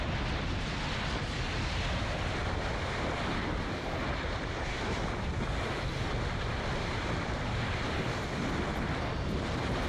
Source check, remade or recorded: recorded